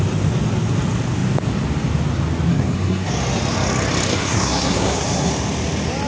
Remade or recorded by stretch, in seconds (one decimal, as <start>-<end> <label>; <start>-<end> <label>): 0.0-2.5 recorded; 2.5-3.1 remade; 3.1-4.1 recorded; 4.1-5.3 remade; 5.3-6.1 recorded